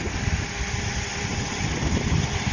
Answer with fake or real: real